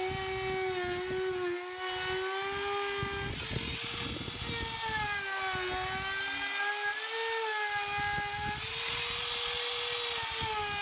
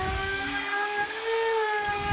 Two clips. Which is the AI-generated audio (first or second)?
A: second